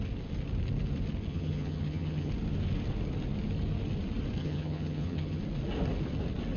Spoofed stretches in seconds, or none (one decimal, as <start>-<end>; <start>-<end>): 1.3-2.3; 4.4-5.4